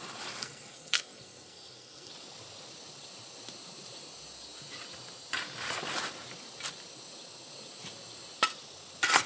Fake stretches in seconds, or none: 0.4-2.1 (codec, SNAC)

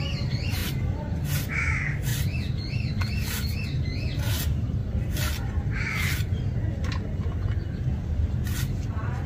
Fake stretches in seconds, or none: 4.8-6.7 (vocoder, BigVGAN v2)

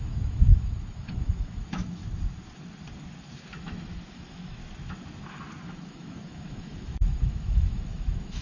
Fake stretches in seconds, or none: 0.0-2.0 (autoencoder, DAC-VAE); 3.6-4.6; 5.6-8.4